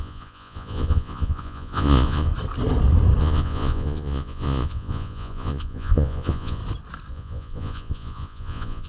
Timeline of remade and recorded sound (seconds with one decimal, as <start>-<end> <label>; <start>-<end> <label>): 0.0-2.3 remade; 2.3-3.2 recorded; 3.2-6.6 remade; 6.6-7.1 recorded; 7.1-8.9 remade